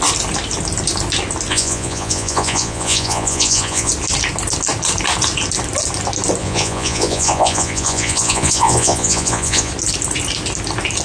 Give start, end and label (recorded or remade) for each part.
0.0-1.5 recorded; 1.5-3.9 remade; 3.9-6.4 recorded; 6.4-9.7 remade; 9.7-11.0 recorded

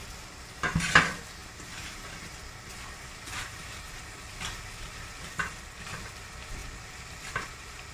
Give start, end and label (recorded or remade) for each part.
0.0-1.4 recorded; 1.4-2.1 remade; 2.1-3.3 recorded; 3.3-3.9 remade; 3.9-7.9 recorded

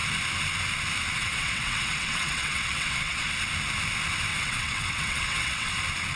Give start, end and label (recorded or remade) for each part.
0.0-1.2 recorded; 1.2-3.3 remade; 3.3-4.3 recorded; 4.3-5.7 remade; 5.7-6.2 recorded

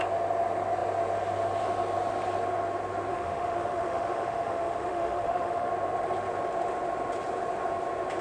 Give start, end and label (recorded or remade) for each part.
0.0-3.1 recorded; 3.1-5.7 remade; 5.7-8.2 recorded

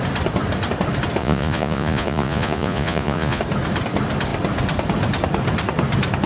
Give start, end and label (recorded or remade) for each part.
0.0-1.2 recorded; 1.2-3.4 remade; 3.4-6.3 recorded

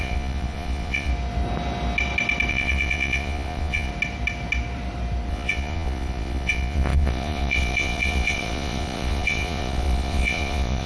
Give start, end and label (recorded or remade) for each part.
0.0-1.1 remade; 1.1-2.5 recorded; 2.5-3.9 remade; 3.9-5.3 recorded; 5.3-10.9 remade

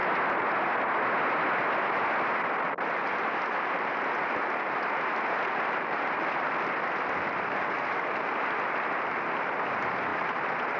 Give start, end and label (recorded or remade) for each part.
0.0-10.8 recorded